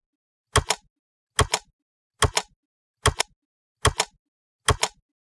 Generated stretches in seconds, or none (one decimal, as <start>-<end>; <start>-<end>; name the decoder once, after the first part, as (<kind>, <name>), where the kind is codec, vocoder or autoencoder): none